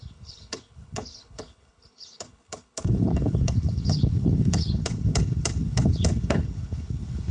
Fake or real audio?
fake